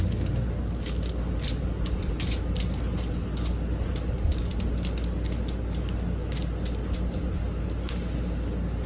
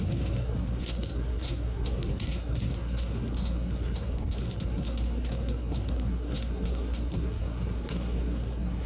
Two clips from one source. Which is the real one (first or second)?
first